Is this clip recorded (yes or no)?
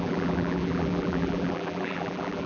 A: no